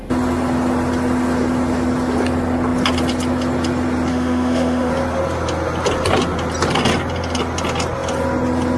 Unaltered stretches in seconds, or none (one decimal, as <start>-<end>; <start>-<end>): 0.0-4.1; 4.9-8.8